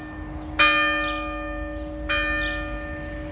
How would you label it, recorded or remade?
recorded